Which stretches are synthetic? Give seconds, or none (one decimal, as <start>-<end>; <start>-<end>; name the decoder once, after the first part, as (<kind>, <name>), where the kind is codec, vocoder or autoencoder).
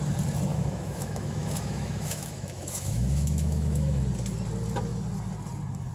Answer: 0.5-4.0 (autoencoder, DAC-VAE)